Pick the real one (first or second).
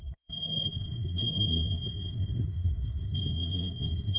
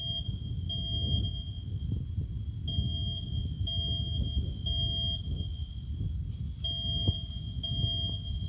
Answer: second